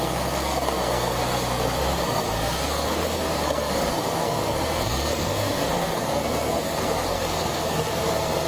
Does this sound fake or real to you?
fake